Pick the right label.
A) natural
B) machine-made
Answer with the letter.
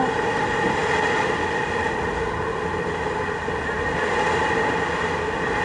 A